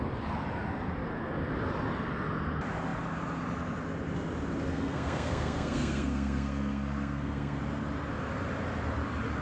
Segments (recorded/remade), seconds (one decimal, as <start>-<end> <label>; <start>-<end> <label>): 0.0-4.7 recorded; 4.7-7.6 remade; 7.6-9.4 recorded